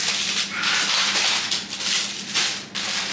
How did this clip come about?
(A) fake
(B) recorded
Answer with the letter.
B